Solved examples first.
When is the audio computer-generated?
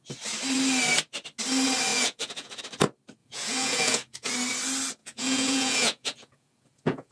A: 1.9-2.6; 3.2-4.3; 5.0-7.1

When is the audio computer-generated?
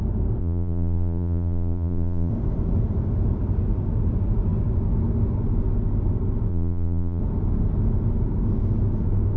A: 0.4-2.3; 6.5-7.2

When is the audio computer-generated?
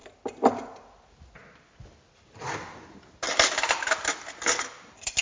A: none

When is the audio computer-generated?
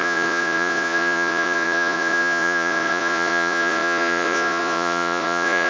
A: 0.0-5.7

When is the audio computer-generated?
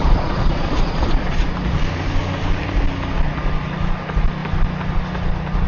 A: 0.0-1.4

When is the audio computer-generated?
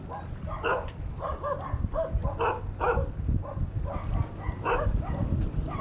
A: none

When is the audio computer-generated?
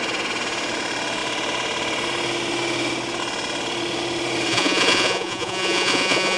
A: 4.5-6.4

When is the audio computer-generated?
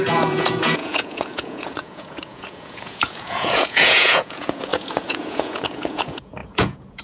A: 0.0-7.0